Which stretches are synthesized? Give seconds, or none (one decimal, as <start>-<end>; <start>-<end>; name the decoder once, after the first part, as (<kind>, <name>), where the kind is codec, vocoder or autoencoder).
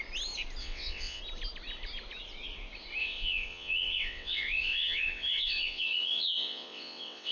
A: 0.6-1.2 (vocoder, WaveNeXt); 3.0-7.3